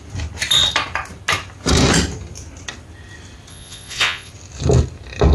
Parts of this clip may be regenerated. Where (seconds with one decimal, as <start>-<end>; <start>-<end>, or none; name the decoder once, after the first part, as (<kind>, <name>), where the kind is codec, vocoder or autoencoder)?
3.5-4.3 (vocoder, Vocos)